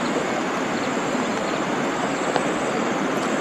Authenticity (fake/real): fake